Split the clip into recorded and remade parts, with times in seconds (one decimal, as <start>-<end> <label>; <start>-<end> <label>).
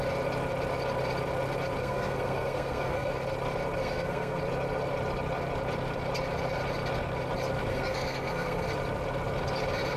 0.0-1.8 recorded; 1.8-3.1 remade; 3.1-3.8 recorded; 3.8-4.4 remade; 4.4-7.7 recorded; 7.7-8.6 remade; 8.6-10.0 recorded